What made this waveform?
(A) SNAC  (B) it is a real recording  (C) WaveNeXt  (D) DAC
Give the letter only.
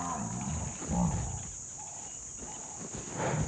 B